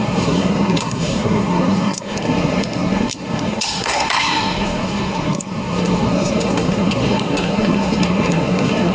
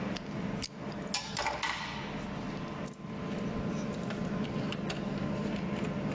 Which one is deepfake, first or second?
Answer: first